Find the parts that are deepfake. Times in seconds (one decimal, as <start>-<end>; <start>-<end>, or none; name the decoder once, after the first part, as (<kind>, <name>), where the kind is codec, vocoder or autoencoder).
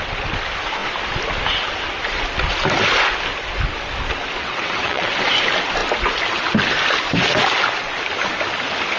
4.4-5.2 (vocoder, WaveNeXt)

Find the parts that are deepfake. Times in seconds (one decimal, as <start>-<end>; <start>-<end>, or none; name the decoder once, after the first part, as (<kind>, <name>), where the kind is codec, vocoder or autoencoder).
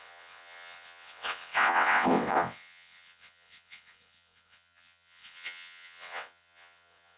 0.0-7.2 (vocoder, WaveNeXt)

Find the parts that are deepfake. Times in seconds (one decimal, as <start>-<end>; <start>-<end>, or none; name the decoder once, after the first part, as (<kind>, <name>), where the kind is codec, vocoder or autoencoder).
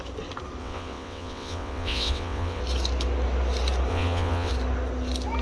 0.6-2.6 (vocoder, WaveNeXt); 3.9-4.5